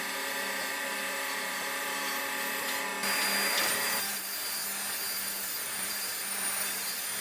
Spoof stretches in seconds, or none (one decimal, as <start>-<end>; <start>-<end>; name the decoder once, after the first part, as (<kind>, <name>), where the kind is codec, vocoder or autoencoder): 0.0-2.9 (vocoder, BigVGAN v2); 3.5-4.6; 5.2-7.2